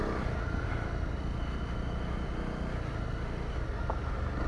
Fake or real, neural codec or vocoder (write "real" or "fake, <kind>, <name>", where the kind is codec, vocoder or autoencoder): real